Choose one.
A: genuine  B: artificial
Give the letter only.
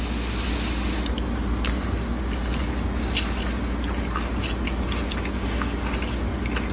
A